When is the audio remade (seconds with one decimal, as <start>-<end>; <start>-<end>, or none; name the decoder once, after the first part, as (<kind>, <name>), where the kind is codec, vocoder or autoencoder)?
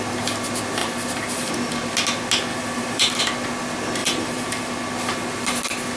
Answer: 0.8-1.5 (vocoder, BigVGAN v2); 2.5-3.2; 4.0-4.7